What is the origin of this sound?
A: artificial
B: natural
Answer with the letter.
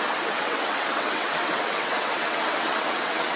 A